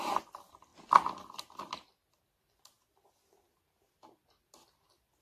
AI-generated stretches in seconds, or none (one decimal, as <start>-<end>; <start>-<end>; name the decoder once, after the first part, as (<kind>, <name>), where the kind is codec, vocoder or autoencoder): none